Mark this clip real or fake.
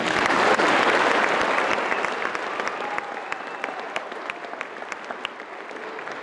real